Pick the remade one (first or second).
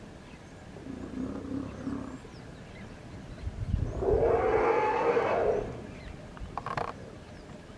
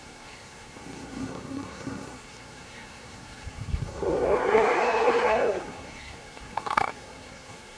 second